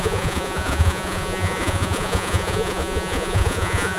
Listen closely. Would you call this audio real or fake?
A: fake